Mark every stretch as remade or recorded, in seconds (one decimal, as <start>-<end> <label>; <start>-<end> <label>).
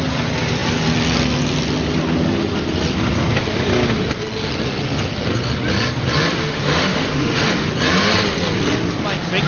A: 0.0-6.4 recorded; 6.4-7.7 remade; 7.7-9.5 recorded